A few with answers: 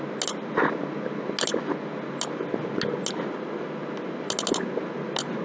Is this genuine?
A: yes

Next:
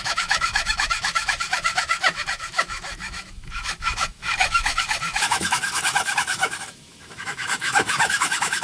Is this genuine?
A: no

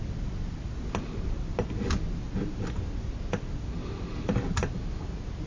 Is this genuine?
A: yes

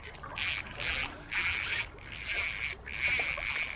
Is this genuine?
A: yes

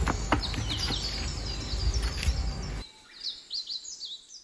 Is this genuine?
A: yes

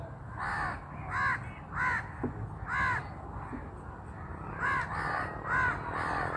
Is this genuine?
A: yes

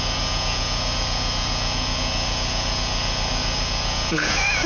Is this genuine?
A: no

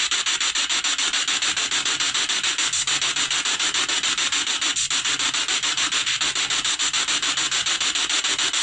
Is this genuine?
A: yes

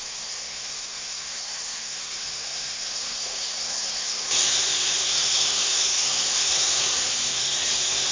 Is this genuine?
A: no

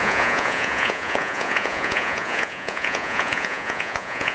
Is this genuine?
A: no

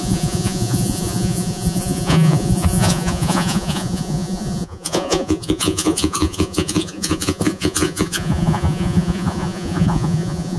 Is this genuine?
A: no